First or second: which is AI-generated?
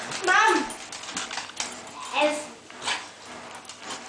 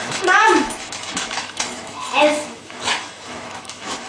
second